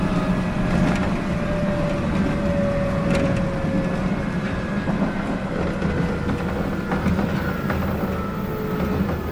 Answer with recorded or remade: recorded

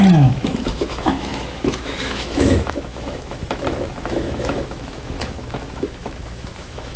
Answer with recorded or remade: remade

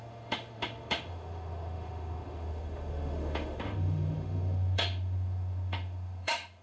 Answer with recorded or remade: remade